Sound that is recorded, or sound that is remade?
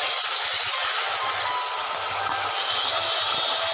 recorded